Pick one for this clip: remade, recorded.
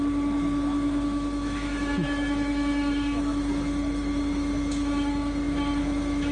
remade